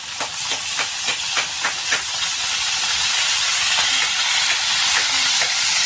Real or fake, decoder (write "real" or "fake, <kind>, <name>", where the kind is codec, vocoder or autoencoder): real